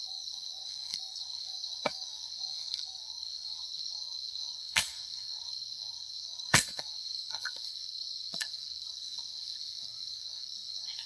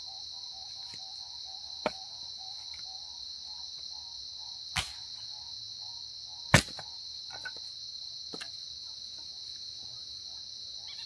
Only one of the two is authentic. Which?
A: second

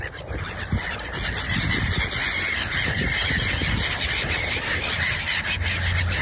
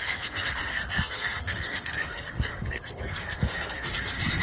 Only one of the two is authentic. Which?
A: first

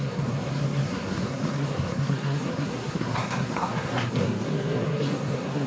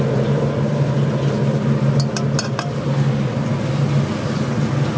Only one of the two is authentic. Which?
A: second